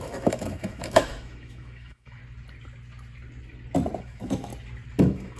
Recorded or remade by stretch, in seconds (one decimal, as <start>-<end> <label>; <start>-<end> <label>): 0.0-2.2 remade; 2.2-4.0 recorded; 4.0-4.5 remade; 4.5-5.0 recorded; 5.0-5.4 remade